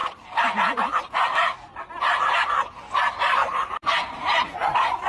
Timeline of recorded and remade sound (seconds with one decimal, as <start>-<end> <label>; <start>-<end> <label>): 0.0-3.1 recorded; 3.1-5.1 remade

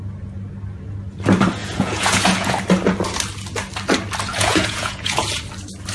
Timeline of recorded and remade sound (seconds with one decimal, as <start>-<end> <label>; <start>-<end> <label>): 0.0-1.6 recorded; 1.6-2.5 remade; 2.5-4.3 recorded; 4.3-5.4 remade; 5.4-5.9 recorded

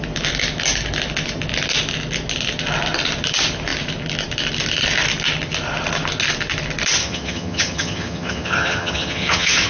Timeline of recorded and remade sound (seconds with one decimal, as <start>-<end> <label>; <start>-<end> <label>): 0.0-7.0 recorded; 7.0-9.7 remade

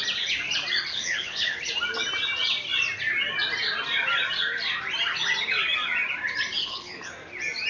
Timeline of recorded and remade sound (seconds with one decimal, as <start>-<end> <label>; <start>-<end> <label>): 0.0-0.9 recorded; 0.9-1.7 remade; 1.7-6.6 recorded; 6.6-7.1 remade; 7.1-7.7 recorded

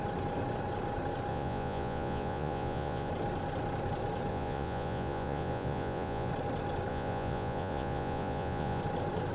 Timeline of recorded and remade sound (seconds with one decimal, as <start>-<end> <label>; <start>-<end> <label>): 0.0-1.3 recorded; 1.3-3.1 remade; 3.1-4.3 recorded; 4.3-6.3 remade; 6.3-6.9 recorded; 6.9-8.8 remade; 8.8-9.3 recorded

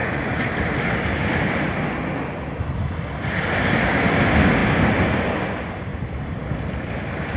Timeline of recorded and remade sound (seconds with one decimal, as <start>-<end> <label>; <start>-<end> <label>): 0.0-0.5 remade; 0.5-7.4 recorded